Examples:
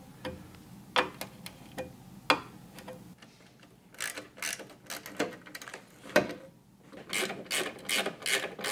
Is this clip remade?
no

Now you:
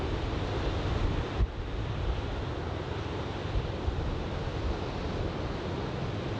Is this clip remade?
no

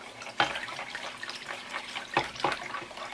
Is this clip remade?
no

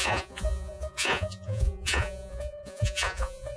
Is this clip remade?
yes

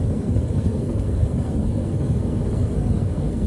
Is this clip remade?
yes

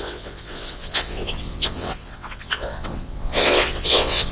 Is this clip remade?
yes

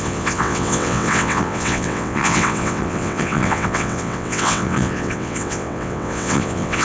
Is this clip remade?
yes